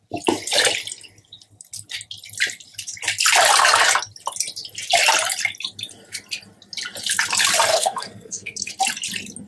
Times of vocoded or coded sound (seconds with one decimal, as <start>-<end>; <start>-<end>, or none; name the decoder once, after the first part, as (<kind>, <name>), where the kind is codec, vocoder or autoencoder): 7.7-8.7 (codec, SNAC)